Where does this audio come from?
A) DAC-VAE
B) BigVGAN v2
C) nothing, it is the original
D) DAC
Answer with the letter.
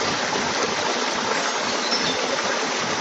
C